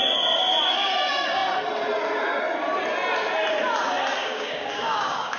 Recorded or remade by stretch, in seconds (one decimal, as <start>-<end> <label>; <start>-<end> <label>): 0.0-4.2 recorded; 4.2-5.4 remade